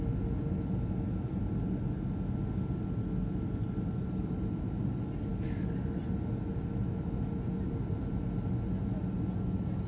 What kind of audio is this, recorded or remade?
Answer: recorded